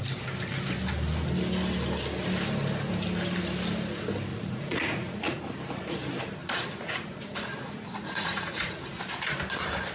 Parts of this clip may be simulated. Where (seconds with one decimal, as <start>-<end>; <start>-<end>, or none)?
4.3-5.4; 6.4-9.0